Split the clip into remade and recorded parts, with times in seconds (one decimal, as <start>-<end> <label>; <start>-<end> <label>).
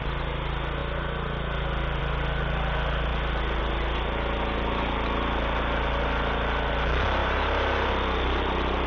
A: 0.0-7.2 recorded; 7.2-7.9 remade; 7.9-8.9 recorded